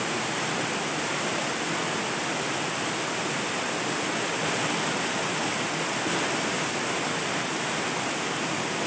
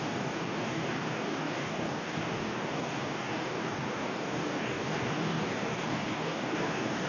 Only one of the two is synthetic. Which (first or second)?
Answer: second